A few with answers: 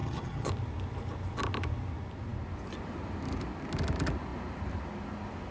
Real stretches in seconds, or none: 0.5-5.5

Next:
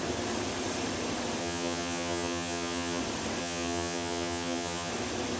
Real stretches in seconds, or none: 0.0-1.4; 3.0-3.4; 4.9-5.4

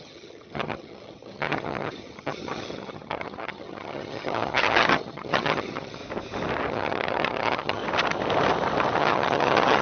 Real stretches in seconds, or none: 6.0-6.7; 7.8-9.0

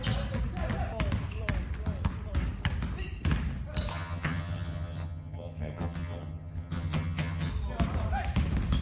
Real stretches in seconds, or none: 0.0-3.9; 7.5-8.8